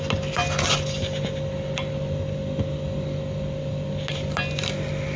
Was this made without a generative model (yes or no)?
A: yes